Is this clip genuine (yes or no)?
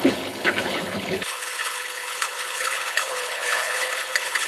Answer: no